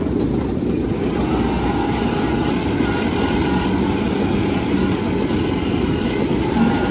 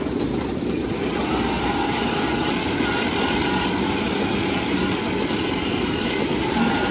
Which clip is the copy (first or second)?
second